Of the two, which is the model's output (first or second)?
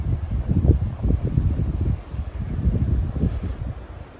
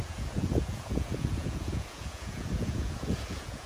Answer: second